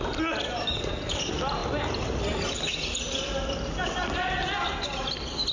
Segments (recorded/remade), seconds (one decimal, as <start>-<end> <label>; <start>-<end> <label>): 0.0-5.5 recorded